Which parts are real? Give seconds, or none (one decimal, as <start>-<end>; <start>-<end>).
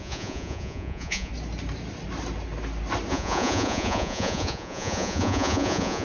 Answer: 1.3-3.1